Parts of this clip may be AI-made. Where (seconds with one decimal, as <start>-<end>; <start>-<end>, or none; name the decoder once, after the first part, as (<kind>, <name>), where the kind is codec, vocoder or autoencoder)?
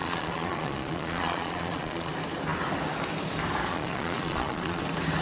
0.0-2.1 (vocoder, Vocos); 3.7-4.8